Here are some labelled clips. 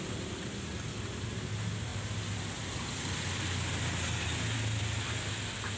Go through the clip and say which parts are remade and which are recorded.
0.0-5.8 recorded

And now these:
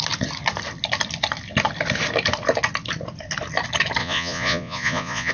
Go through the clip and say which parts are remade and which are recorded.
0.0-4.0 recorded; 4.0-5.3 remade

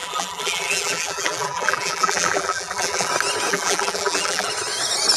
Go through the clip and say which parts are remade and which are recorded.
0.0-3.1 remade; 3.1-3.5 recorded; 3.5-4.5 remade; 4.5-5.2 recorded

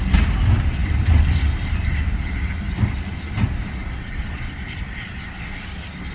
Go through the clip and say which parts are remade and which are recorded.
0.0-6.1 recorded

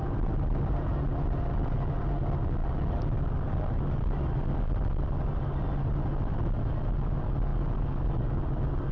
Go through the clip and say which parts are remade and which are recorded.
0.0-8.9 recorded

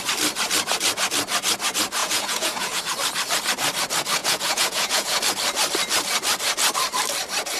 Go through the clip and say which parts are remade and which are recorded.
0.0-2.0 recorded; 2.0-2.8 remade; 2.8-4.2 recorded; 4.2-5.2 remade; 5.2-7.6 recorded

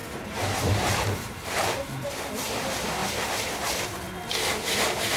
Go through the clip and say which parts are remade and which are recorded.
0.0-1.9 remade; 1.9-3.0 recorded; 3.0-3.5 remade; 3.5-5.2 recorded

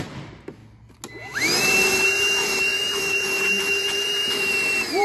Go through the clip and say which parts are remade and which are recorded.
0.0-0.6 remade; 0.6-1.6 recorded; 1.6-5.0 remade